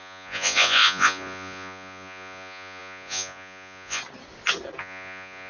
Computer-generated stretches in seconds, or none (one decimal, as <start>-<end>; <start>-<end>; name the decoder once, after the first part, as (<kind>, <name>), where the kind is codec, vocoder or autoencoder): 0.0-4.0 (vocoder, Vocos); 4.8-5.5